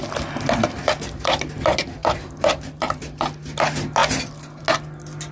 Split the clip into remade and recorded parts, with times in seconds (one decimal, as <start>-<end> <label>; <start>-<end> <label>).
0.0-2.0 recorded; 2.0-3.0 remade; 3.0-5.3 recorded